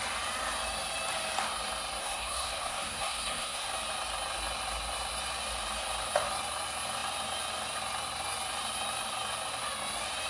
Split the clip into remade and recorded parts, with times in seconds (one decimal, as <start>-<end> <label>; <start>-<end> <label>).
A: 0.0-2.0 recorded; 2.0-3.7 remade; 3.7-10.3 recorded